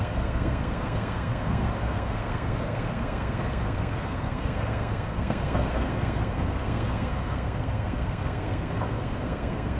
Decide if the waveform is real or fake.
fake